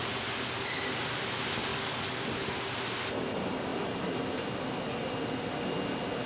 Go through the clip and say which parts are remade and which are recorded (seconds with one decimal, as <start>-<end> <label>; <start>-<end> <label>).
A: 0.0-1.7 recorded; 1.7-2.2 remade; 2.2-6.3 recorded